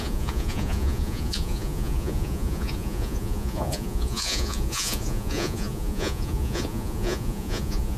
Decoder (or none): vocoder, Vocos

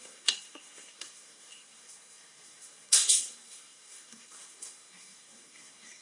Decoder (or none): codec, SNAC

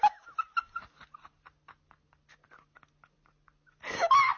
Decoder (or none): none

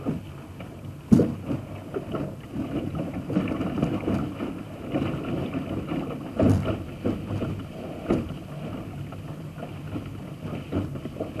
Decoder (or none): none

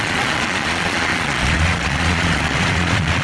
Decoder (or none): vocoder, Vocos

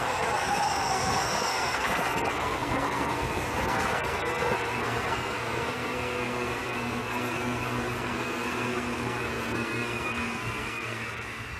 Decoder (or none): codec, SNAC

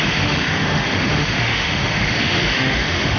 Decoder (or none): autoencoder, DAC-VAE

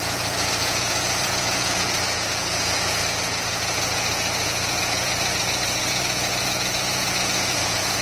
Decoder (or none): vocoder, Vocos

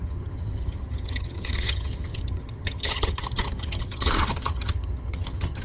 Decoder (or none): vocoder, HiFi-GAN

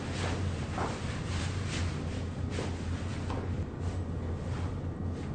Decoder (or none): none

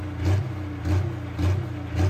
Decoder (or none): none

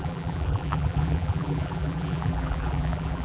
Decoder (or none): vocoder, BigVGAN v2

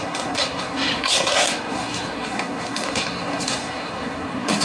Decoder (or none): codec, SNAC